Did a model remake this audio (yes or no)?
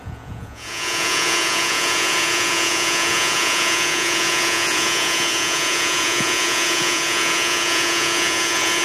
yes